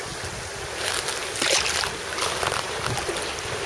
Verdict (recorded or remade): recorded